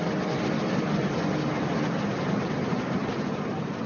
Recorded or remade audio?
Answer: recorded